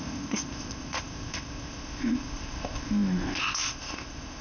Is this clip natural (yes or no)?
no